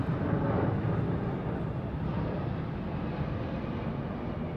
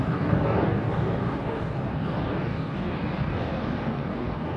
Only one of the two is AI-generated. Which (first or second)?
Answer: second